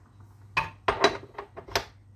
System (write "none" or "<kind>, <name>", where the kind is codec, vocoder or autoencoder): none